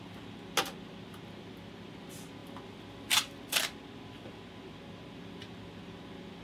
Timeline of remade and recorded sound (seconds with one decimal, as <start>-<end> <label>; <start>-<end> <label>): 0.0-6.4 recorded